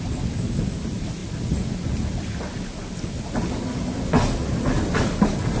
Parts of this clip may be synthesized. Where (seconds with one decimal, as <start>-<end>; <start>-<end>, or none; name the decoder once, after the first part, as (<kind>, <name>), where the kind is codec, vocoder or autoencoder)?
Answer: none

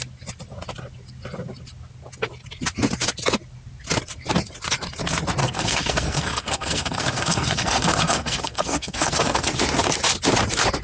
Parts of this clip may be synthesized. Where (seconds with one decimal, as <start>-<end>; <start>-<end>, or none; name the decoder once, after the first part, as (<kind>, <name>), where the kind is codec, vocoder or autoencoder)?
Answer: 5.4-9.6 (codec, SNAC)

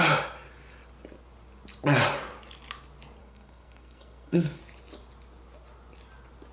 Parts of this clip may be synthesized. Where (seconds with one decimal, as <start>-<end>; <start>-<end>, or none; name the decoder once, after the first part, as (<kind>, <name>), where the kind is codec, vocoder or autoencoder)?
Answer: 3.2-4.6 (codec, SNAC)

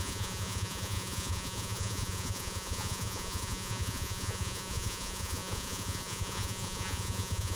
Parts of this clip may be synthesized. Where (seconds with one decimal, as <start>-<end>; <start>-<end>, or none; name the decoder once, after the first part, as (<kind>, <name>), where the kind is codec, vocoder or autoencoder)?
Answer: 0.0-7.6 (vocoder, Vocos)